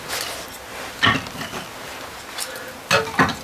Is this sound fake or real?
real